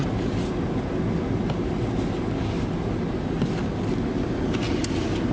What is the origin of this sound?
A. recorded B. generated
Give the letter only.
A